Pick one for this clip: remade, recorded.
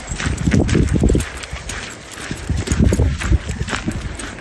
recorded